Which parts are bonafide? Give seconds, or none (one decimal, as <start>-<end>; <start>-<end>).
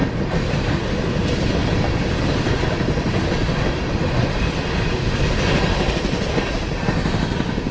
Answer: 0.0-7.7